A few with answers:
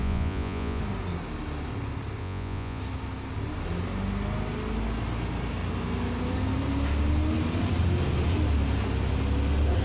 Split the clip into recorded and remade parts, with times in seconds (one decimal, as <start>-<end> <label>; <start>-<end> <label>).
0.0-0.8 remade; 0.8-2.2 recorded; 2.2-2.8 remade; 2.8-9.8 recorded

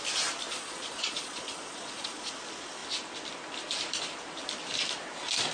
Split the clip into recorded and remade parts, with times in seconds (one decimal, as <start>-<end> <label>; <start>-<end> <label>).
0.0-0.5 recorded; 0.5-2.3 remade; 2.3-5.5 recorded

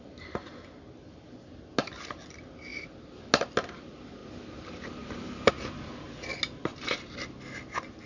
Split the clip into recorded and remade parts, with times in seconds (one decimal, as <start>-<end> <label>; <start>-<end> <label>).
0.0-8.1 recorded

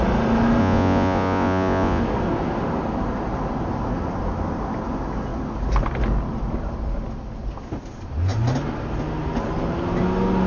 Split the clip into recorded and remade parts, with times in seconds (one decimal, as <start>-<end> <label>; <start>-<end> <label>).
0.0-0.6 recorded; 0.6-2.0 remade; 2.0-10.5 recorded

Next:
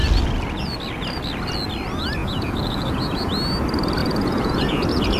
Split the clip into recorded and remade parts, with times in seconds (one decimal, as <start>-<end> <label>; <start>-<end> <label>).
0.0-2.2 recorded; 2.2-3.3 remade; 3.3-4.0 recorded; 4.0-5.2 remade